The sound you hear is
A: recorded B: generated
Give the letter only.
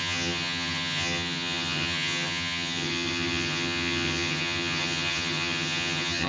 B